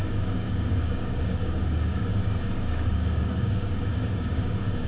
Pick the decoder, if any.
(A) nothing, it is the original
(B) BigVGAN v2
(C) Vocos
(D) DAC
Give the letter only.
D